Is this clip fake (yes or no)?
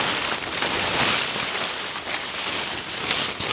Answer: no